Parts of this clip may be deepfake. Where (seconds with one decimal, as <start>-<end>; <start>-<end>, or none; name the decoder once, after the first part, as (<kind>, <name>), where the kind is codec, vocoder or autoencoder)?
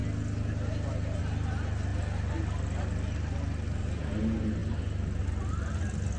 none